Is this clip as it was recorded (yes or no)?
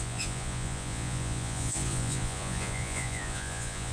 no